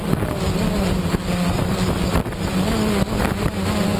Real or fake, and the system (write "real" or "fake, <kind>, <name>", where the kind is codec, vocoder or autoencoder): real